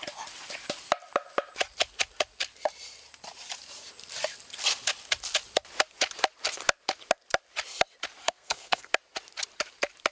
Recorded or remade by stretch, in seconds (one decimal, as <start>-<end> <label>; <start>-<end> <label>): 0.0-8.2 recorded; 8.2-8.9 remade; 8.9-10.1 recorded